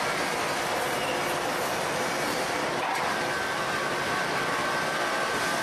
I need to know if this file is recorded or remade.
remade